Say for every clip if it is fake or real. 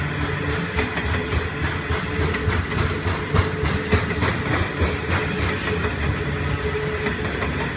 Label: real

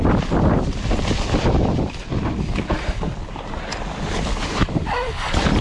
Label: real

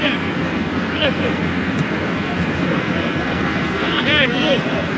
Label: fake